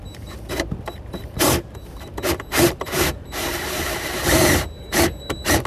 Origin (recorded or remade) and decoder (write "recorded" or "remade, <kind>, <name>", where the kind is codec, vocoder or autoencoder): remade, vocoder, BigVGAN v2